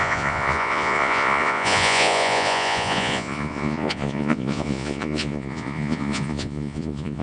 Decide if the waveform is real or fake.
fake